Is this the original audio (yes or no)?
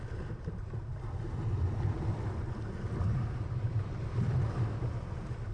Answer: yes